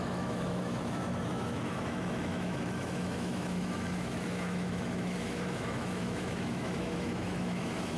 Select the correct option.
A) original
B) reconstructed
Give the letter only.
B